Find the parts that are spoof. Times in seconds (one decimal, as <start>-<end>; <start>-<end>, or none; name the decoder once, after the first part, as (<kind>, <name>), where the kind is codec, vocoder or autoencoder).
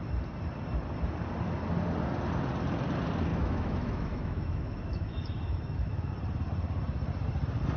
3.3-6.1 (autoencoder, DAC-VAE)